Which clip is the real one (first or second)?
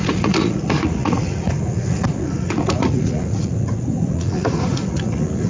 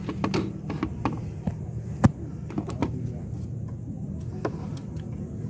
second